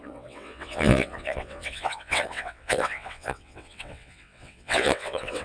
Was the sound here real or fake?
fake